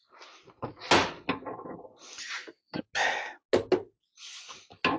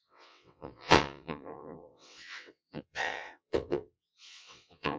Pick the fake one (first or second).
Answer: second